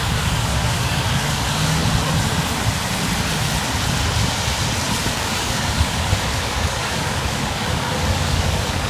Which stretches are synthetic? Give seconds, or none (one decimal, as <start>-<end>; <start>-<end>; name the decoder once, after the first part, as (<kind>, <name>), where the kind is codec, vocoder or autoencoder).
0.0-1.8 (codec, DAC); 5.0-8.9